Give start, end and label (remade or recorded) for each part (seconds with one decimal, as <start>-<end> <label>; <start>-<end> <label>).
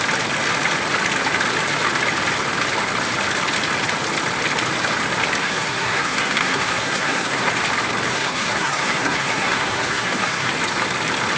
0.0-5.4 recorded; 5.4-7.5 remade; 7.5-8.1 recorded; 8.1-10.5 remade; 10.5-11.4 recorded